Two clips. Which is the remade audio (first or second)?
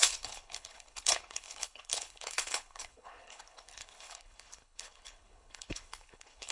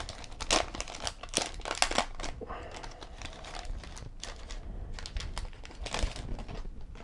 first